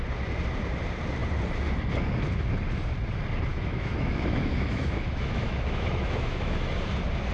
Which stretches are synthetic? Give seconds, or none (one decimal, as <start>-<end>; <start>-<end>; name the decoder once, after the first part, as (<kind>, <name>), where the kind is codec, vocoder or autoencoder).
3.5-6.7 (autoencoder, DAC-VAE)